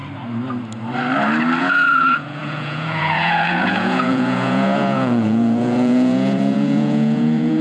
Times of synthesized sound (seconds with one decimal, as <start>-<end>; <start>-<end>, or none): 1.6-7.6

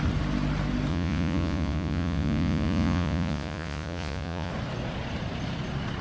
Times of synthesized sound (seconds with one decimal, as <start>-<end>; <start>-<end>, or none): 0.9-4.5

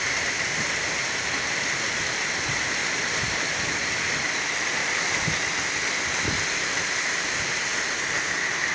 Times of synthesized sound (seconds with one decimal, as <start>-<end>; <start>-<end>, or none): none